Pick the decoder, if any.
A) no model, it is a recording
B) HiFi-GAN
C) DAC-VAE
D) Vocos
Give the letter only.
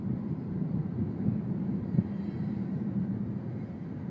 A